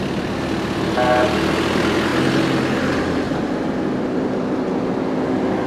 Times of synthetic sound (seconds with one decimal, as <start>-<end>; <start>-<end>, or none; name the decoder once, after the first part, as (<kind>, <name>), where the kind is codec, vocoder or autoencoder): none